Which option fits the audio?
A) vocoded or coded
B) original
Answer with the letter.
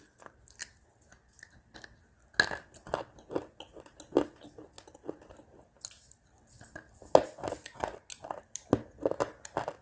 B